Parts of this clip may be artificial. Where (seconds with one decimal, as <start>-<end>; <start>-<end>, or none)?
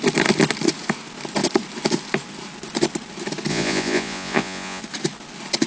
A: 3.5-4.8